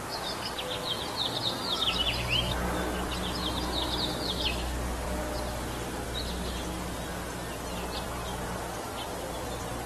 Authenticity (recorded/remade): recorded